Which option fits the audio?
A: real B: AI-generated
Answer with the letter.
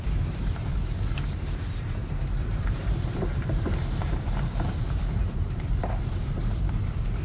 B